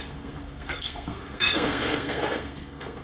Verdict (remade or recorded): remade